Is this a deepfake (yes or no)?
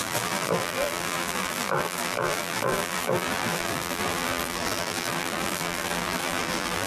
yes